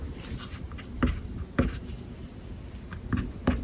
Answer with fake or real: real